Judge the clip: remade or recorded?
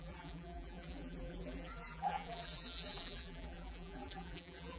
remade